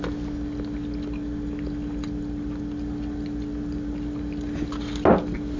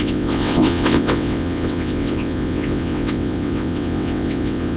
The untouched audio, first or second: first